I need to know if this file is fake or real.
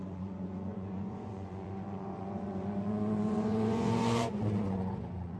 fake